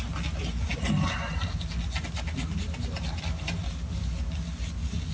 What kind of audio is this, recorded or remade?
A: recorded